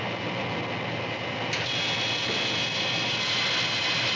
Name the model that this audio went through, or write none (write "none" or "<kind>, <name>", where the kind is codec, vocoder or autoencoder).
none